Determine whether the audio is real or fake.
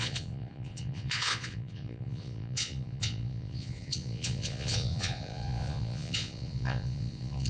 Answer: fake